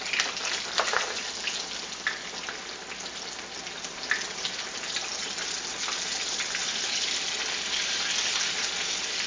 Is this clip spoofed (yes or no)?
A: no